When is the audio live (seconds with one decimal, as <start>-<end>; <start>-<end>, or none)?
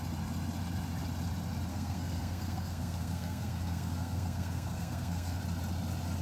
0.0-1.7; 5.4-6.2